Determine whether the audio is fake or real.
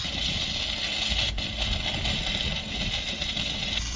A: real